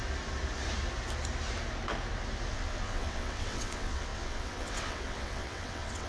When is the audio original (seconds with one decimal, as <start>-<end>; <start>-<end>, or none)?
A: 0.0-2.5